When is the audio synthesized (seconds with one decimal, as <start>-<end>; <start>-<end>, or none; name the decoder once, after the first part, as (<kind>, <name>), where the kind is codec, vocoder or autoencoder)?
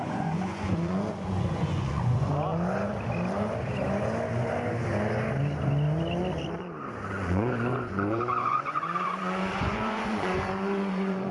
0.0-2.3 (vocoder, Vocos); 7.1-11.3